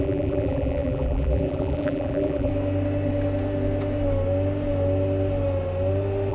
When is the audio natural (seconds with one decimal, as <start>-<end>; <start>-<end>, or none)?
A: 2.5-6.3